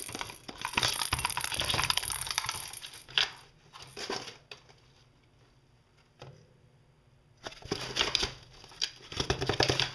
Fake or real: real